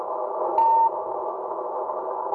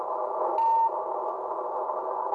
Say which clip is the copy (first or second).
first